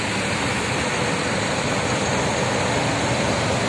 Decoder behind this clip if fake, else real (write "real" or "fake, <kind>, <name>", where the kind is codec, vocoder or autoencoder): fake, vocoder, BigVGAN v2